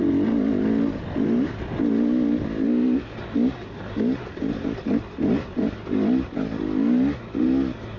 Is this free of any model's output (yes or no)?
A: yes